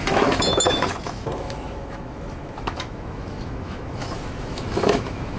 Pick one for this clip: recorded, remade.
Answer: remade